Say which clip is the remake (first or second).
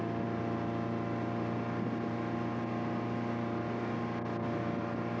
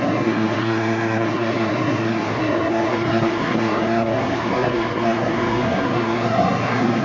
second